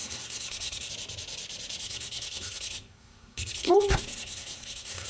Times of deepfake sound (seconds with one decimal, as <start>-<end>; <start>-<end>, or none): 0.0-0.9; 1.8-5.1